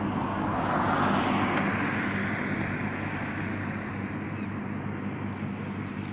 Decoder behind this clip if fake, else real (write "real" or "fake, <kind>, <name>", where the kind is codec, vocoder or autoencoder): real